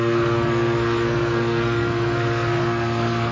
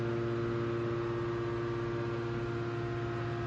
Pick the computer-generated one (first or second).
first